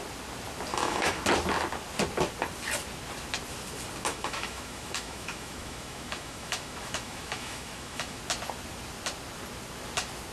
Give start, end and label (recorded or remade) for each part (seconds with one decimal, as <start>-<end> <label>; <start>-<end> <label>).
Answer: 0.0-0.7 recorded; 0.7-1.2 remade; 1.2-4.1 recorded; 4.1-8.2 remade; 8.2-10.3 recorded